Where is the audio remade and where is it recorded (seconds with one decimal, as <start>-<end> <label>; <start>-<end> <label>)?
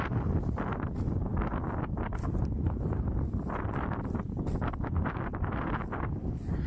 0.0-6.7 recorded